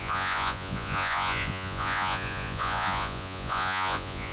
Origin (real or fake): fake